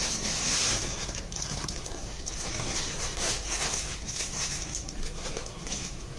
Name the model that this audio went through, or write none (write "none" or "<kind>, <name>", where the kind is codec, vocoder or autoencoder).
codec, SNAC